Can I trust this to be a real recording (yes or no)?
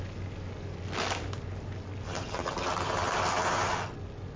yes